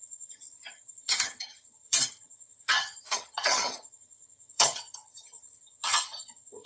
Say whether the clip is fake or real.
fake